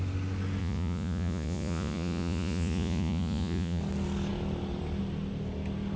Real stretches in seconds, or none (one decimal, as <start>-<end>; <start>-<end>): 0.0-0.6; 3.8-6.0